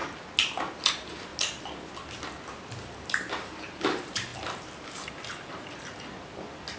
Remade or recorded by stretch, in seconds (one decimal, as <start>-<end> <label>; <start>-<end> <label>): 0.0-0.9 recorded; 0.9-1.3 remade; 1.3-3.3 recorded; 3.3-4.3 remade; 4.3-6.8 recorded